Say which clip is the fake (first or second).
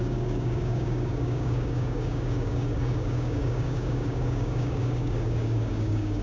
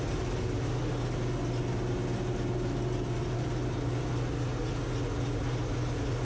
first